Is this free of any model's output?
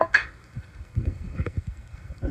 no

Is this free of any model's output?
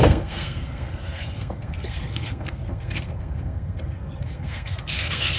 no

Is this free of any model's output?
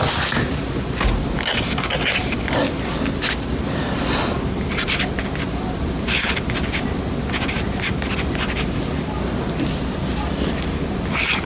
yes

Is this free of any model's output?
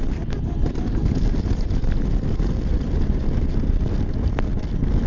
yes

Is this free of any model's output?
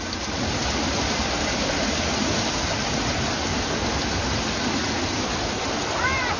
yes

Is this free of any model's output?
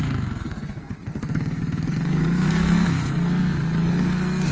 no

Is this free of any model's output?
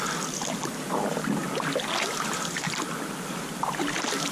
yes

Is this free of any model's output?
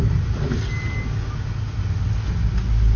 yes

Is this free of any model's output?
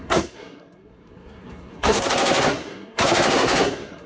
no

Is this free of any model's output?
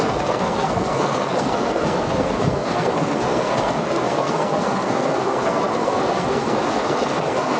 no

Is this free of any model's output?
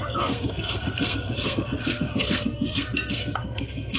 no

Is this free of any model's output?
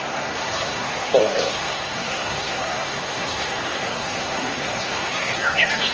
no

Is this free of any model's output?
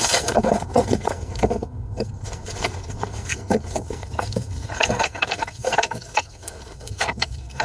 no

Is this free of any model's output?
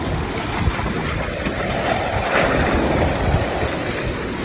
yes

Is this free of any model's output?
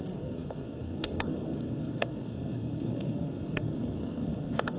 no